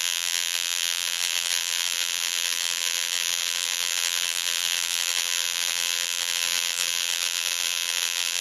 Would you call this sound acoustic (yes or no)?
no